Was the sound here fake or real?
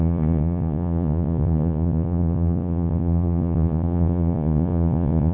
fake